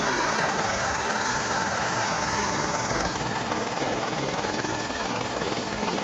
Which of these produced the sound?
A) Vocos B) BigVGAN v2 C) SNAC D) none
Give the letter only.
C